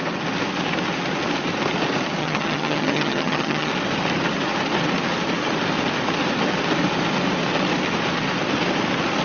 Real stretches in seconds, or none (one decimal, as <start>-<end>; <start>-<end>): 0.0-2.2; 3.7-9.2